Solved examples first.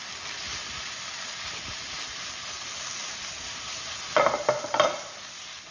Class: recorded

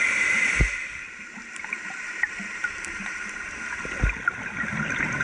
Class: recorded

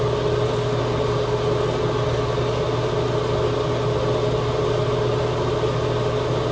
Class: recorded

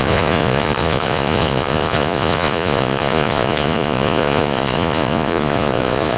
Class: remade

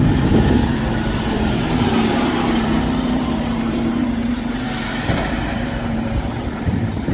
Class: remade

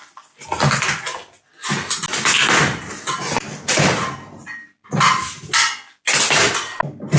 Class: recorded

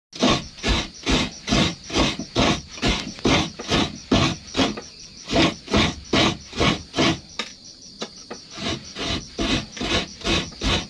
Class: recorded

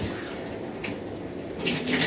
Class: recorded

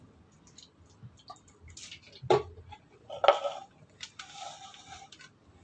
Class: recorded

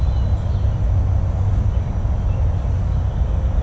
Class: recorded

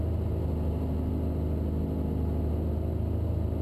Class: recorded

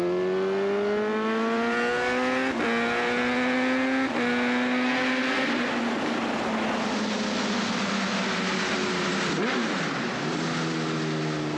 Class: recorded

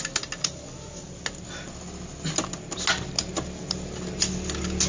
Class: recorded